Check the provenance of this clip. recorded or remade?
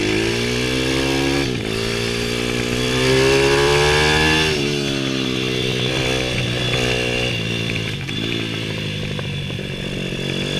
recorded